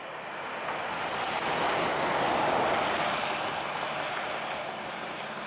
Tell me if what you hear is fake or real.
real